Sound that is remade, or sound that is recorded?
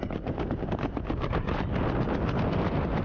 recorded